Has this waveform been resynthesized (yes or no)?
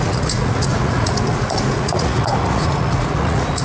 yes